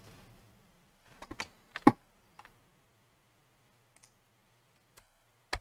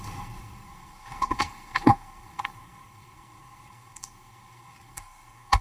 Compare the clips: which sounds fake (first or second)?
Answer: second